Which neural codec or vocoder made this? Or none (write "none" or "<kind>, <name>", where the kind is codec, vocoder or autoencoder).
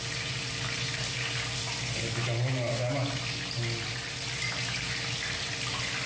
none